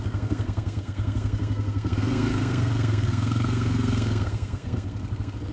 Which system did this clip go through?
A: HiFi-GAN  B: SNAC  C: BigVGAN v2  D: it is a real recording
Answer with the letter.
B